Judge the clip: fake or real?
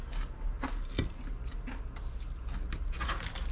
real